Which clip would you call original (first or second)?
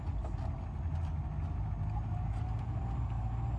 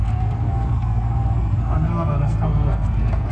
first